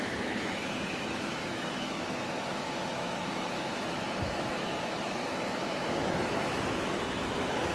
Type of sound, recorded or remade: remade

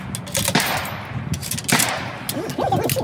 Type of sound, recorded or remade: recorded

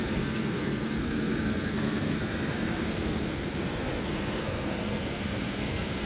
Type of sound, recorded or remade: remade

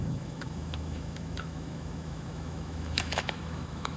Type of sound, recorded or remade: remade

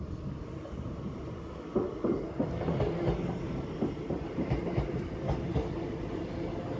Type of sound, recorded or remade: recorded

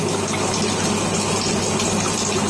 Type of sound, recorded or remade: recorded